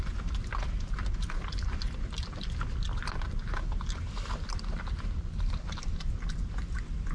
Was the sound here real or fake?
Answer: real